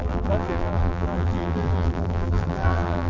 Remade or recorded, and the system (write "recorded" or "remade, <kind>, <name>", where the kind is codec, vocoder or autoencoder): remade, vocoder, BigVGAN v2